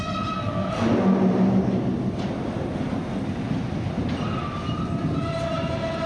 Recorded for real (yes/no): yes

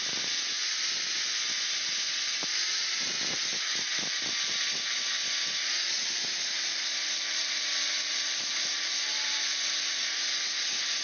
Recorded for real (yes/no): yes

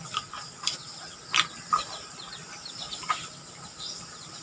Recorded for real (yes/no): yes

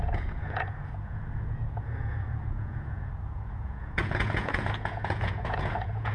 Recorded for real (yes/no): no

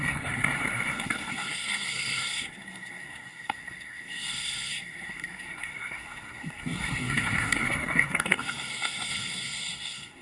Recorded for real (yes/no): no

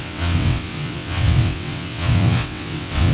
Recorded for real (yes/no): no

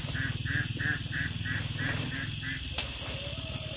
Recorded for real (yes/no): yes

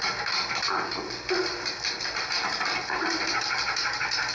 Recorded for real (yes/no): yes